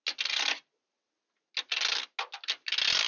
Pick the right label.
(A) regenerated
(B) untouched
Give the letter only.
B